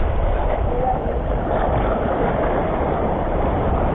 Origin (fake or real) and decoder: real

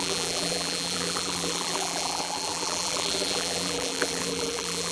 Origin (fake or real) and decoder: fake, vocoder, BigVGAN v2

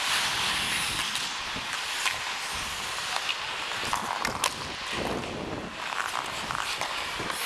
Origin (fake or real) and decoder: real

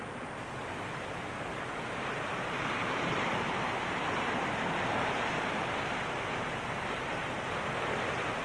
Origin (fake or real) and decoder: real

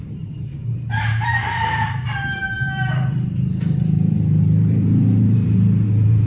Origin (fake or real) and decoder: fake, vocoder, BigVGAN v2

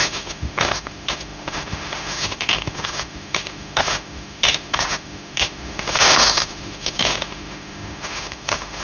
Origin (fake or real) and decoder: fake, autoencoder, DAC-VAE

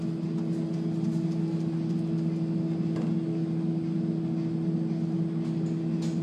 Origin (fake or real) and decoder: real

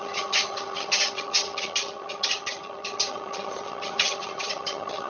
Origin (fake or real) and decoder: fake, vocoder, HiFi-GAN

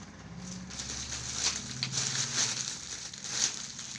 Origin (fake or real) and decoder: real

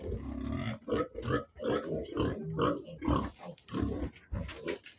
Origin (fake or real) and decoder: real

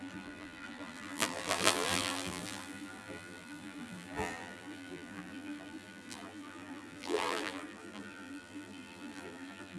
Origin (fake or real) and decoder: fake, vocoder, BigVGAN v2